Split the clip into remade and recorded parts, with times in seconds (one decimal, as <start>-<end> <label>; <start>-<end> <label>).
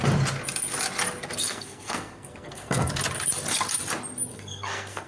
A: 0.0-1.4 recorded; 1.4-2.9 remade; 2.9-4.3 recorded; 4.3-5.1 remade